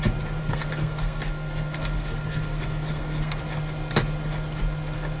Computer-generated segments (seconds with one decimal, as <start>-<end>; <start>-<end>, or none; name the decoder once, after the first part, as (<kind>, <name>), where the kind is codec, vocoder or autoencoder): 0.4-3.4 (codec, SNAC)